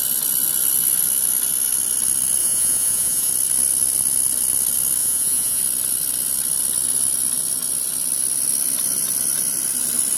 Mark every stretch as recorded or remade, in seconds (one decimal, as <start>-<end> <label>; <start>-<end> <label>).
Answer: 0.0-2.4 recorded; 2.4-3.3 remade; 3.3-5.0 recorded; 5.0-5.6 remade; 5.6-10.2 recorded